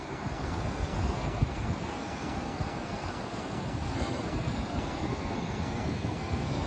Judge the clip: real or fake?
fake